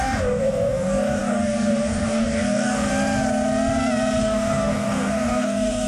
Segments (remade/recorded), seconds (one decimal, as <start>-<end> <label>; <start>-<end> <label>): 0.0-2.9 remade; 2.9-4.2 recorded; 4.2-5.9 remade

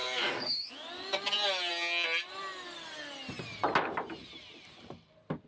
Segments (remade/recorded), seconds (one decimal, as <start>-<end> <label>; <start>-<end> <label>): 0.0-0.7 remade; 0.7-5.5 recorded

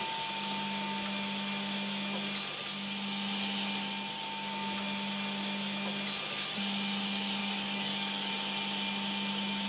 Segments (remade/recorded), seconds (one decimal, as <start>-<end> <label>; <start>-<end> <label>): 0.0-7.4 recorded; 7.4-8.3 remade; 8.3-9.7 recorded

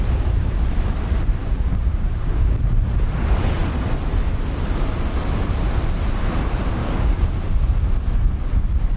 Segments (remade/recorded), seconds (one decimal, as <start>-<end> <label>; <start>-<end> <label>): 0.0-1.4 recorded; 1.4-2.6 remade; 2.6-6.8 recorded; 6.8-7.3 remade; 7.3-9.0 recorded

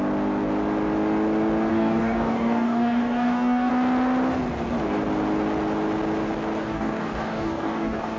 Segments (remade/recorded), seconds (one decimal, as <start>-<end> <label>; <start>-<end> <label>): 0.0-1.7 recorded; 1.7-3.7 remade; 3.7-6.6 recorded; 6.6-8.2 remade

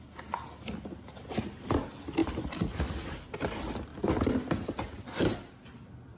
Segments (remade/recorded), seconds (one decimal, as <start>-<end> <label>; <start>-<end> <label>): 0.0-6.2 recorded